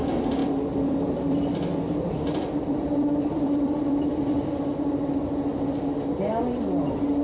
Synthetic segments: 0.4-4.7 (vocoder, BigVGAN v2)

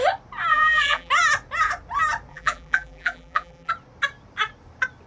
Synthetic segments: 0.5-1.1 (vocoder, BigVGAN v2); 2.3-3.7

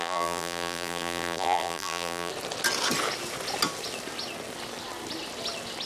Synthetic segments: 0.0-2.3 (vocoder, BigVGAN v2)

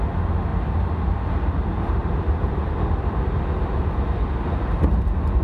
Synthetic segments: 0.5-1.3 (vocoder, BigVGAN v2); 2.0-3.7

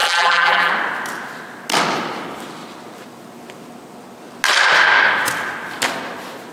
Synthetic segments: 0.0-0.7 (vocoder, BigVGAN v2)